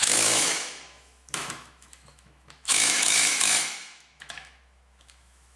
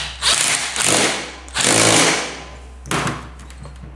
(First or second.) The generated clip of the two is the first